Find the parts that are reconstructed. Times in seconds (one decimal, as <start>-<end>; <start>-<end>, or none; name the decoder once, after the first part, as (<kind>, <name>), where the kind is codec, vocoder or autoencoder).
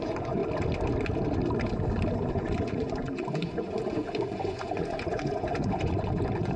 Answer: 0.0-0.4 (vocoder, Vocos); 2.3-6.6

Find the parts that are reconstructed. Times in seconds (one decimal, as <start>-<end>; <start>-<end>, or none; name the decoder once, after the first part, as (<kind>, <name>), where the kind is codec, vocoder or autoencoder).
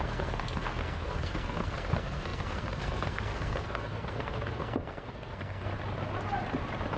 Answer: 0.0-5.7 (codec, SNAC)